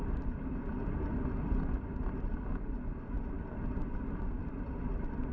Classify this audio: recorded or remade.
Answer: recorded